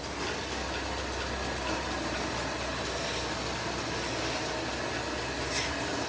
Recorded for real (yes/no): yes